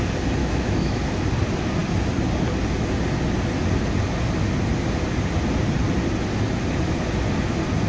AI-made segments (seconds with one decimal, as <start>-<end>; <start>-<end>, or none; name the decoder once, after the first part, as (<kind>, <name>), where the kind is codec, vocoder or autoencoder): 0.4-1.0 (autoencoder, DAC-VAE)